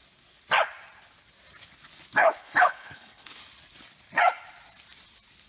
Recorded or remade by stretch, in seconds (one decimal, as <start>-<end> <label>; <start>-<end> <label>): 0.0-2.2 recorded; 2.2-3.4 remade; 3.4-5.5 recorded